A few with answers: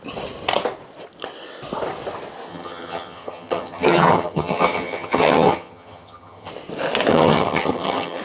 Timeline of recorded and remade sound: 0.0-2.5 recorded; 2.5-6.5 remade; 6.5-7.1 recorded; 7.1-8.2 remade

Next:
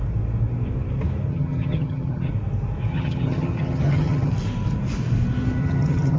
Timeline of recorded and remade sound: 0.0-1.3 recorded; 1.3-2.3 remade; 2.3-2.9 recorded; 2.9-4.3 remade; 4.3-5.6 recorded; 5.6-6.2 remade

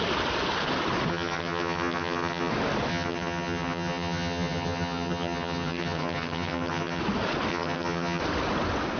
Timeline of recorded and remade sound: 0.0-1.1 recorded; 1.1-2.5 remade; 2.5-2.9 recorded; 2.9-7.0 remade; 7.0-7.5 recorded; 7.5-8.2 remade; 8.2-9.0 recorded

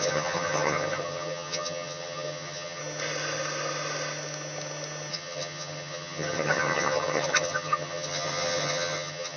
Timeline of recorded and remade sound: 0.0-2.8 remade; 2.8-5.1 recorded; 5.1-9.4 remade

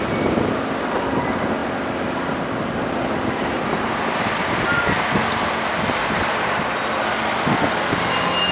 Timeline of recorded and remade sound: 0.0-8.5 recorded

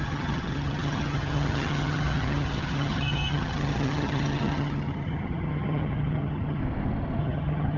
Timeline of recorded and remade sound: 0.0-6.6 remade; 6.6-7.2 recorded; 7.2-7.8 remade